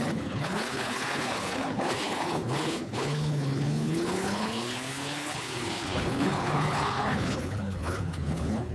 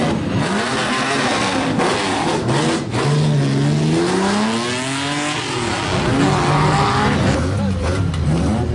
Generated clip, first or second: first